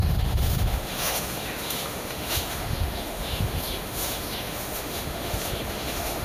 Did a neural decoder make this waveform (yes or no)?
yes